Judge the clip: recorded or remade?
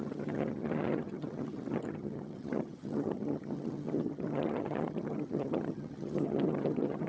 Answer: remade